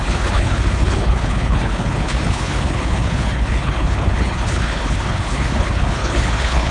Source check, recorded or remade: remade